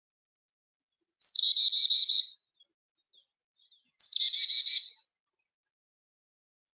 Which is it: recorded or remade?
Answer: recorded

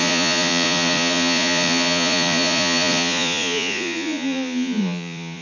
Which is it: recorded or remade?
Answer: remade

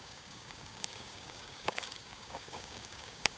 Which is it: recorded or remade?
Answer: remade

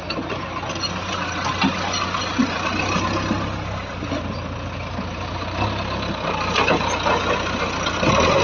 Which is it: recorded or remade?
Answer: recorded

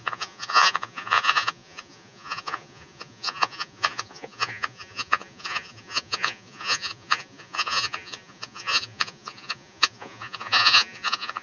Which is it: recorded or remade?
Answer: remade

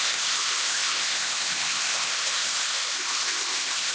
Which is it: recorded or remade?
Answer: remade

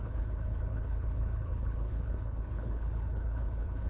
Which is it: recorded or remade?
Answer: remade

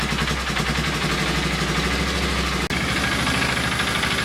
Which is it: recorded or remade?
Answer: recorded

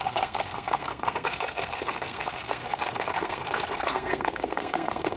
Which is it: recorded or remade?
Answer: remade